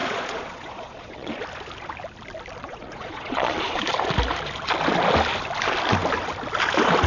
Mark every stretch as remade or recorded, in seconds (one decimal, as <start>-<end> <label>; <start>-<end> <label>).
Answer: 0.0-1.4 remade; 1.4-2.7 recorded; 2.7-3.8 remade; 3.8-7.1 recorded